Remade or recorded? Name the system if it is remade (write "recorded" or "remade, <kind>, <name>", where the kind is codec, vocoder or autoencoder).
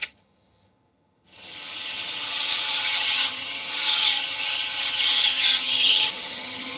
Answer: remade, vocoder, HiFi-GAN